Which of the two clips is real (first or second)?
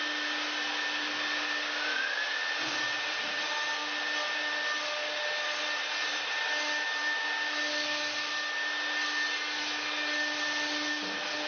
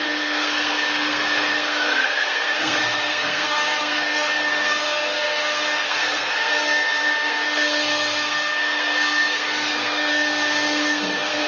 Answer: first